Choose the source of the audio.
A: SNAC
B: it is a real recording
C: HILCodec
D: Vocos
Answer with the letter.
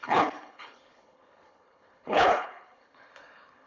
C